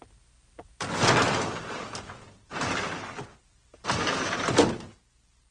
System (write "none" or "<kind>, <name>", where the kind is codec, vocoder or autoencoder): none